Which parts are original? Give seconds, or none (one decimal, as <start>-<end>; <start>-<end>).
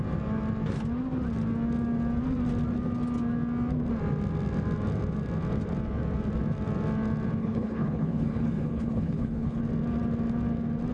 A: 0.0-7.4; 9.6-10.9